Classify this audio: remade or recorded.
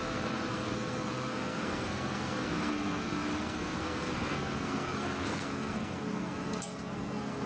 remade